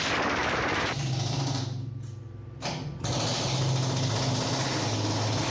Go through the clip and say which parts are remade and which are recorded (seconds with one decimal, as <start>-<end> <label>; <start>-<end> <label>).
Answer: 0.0-0.4 recorded; 0.4-2.9 remade; 2.9-5.5 recorded